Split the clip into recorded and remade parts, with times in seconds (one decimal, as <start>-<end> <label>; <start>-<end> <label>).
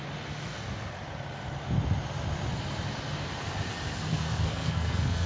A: 0.0-4.1 recorded; 4.1-5.3 remade